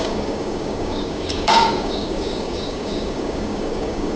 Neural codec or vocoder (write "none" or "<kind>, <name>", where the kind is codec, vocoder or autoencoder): codec, DAC